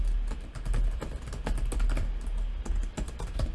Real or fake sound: real